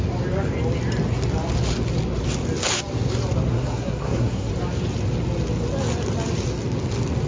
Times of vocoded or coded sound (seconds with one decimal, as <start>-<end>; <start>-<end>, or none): 3.5-4.5